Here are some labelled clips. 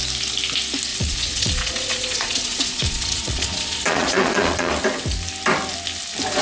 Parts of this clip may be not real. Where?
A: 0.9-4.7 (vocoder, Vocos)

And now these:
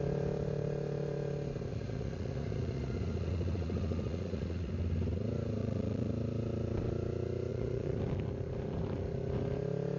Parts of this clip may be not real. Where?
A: 1.7-4.7 (vocoder, Vocos); 5.6-6.1; 7.5-8.0